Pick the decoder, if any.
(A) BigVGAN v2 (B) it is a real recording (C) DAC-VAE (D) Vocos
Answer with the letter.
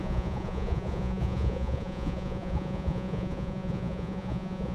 D